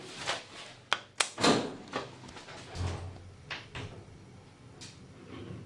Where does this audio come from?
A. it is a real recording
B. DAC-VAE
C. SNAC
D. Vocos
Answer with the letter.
A